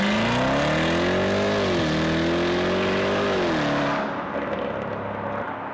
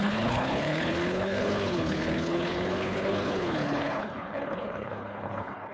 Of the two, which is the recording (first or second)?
first